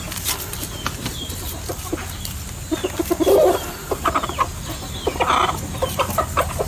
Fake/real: real